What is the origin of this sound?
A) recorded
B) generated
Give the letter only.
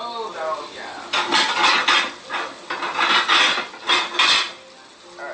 A